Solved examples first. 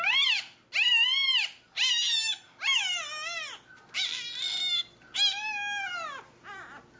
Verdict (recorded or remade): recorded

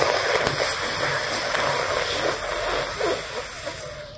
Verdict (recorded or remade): recorded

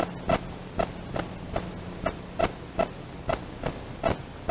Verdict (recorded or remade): recorded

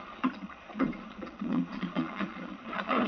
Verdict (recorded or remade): remade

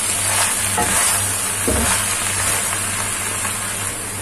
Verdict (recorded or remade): recorded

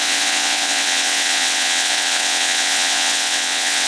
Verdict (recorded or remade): remade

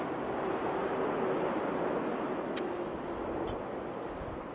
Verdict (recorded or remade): recorded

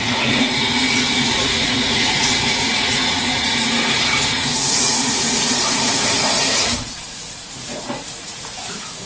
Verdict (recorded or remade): remade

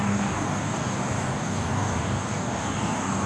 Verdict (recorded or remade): remade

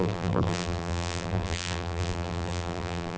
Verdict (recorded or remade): remade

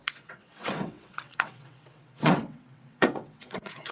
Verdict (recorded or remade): remade